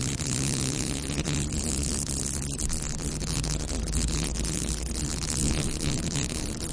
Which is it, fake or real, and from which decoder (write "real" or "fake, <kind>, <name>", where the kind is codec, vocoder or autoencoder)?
real